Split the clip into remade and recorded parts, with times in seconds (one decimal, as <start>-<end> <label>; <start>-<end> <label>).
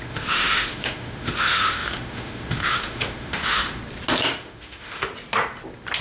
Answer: 0.0-3.8 remade; 3.8-4.4 recorded; 4.4-5.1 remade; 5.1-6.0 recorded